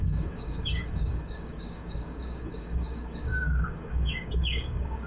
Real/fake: fake